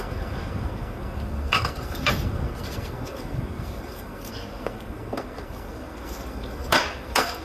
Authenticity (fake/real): fake